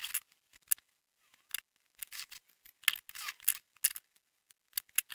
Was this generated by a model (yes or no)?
no